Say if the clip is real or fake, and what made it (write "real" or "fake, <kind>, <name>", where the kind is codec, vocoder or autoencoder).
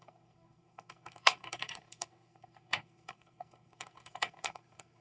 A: fake, codec, SNAC